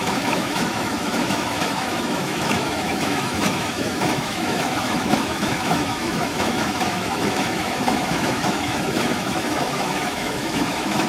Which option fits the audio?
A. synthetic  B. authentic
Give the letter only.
A